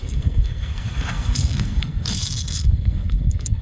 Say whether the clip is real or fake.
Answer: fake